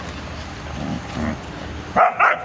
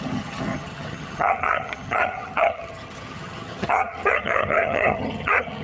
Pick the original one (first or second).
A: first